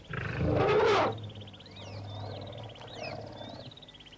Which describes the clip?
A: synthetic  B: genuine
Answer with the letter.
B